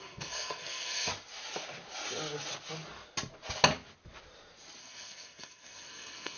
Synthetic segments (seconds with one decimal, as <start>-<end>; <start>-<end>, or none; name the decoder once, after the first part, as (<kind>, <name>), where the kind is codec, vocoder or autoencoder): 0.0-1.1 (codec, SNAC); 4.8-6.4